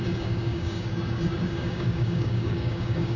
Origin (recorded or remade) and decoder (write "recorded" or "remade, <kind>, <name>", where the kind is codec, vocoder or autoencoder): remade, codec, DAC